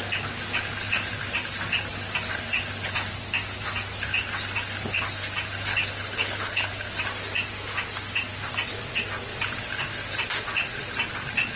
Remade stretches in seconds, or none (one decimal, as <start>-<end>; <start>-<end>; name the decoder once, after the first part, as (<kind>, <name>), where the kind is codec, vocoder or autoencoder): 5.7-7.0 (codec, HILCodec)